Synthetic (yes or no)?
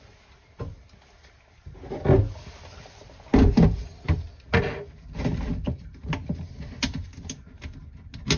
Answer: no